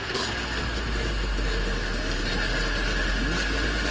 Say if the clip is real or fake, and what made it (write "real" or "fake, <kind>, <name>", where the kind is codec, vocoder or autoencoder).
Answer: real